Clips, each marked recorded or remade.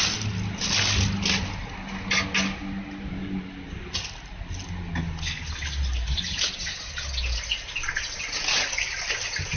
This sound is recorded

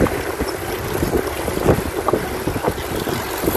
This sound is recorded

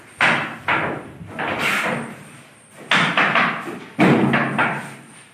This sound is recorded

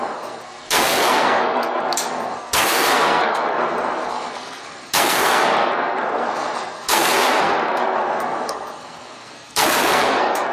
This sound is remade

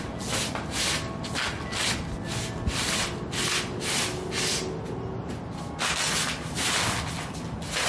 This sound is recorded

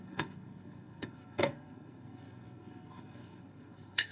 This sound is remade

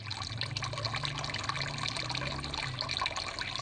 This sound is recorded